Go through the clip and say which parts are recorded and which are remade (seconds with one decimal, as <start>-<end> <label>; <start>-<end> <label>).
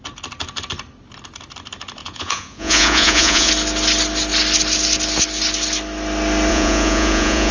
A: 0.0-2.0 recorded; 2.0-3.5 remade; 3.5-6.5 recorded; 6.5-7.5 remade